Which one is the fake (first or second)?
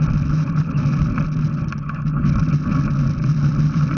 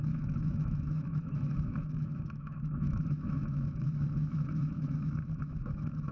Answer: second